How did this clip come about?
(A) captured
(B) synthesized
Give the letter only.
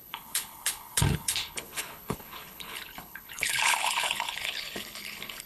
B